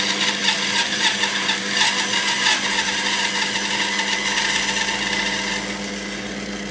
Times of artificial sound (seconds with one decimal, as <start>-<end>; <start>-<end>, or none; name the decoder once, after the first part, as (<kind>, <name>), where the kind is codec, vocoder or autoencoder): 0.4-1.6 (vocoder, BigVGAN v2)

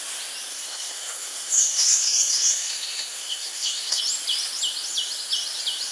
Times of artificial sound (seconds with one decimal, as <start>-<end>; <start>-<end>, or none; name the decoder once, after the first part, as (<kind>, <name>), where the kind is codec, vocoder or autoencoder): 0.5-4.0 (codec, SNAC)

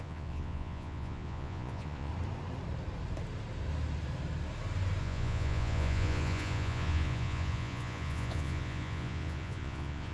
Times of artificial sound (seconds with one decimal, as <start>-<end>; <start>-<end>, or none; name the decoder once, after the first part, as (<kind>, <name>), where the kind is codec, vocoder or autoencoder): 0.0-2.1 (vocoder, Vocos); 5.0-10.1

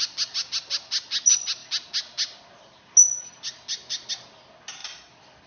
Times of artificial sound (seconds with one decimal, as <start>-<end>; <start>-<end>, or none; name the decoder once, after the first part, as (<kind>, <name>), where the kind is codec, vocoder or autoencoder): none

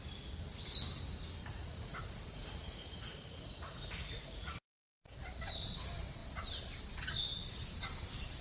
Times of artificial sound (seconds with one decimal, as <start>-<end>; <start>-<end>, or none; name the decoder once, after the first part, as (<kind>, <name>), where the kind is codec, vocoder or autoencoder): 1.4-4.7 (vocoder, Vocos)

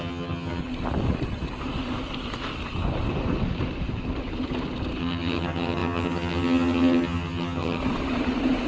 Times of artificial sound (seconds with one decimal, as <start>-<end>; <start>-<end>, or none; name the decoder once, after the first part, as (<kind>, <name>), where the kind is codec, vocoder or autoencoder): 0.0-0.6 (vocoder, HiFi-GAN); 5.0-7.8